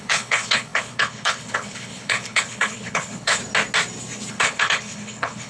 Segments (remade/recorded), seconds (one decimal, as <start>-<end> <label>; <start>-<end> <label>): 0.0-3.4 remade; 3.4-4.3 recorded; 4.3-5.5 remade